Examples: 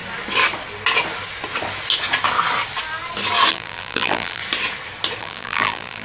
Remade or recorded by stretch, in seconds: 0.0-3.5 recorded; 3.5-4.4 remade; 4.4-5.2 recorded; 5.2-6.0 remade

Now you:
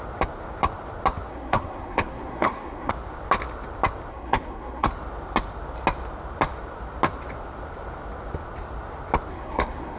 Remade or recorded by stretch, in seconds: 0.0-1.3 recorded; 1.3-2.9 remade; 2.9-4.1 recorded; 4.1-4.9 remade; 4.9-9.3 recorded; 9.3-10.0 remade

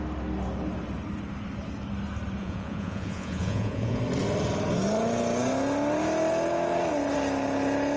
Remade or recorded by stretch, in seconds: 0.0-2.4 recorded; 2.4-4.0 remade; 4.0-8.0 recorded

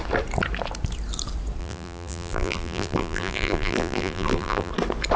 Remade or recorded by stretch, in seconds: 0.0-1.6 recorded; 1.6-4.7 remade; 4.7-5.2 recorded

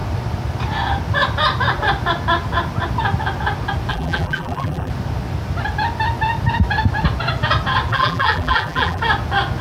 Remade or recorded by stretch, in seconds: 0.0-3.9 recorded; 3.9-4.9 remade; 4.9-7.9 recorded; 7.9-9.0 remade; 9.0-9.6 recorded

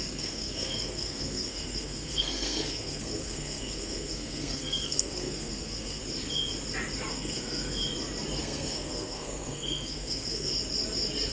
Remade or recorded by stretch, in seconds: 0.0-6.0 remade; 6.0-7.1 recorded; 7.1-7.8 remade; 7.8-8.4 recorded; 8.4-10.5 remade; 10.5-11.3 recorded

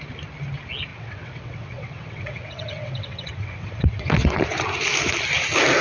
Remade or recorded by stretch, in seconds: 0.0-0.9 recorded; 0.9-4.4 remade; 4.4-5.8 recorded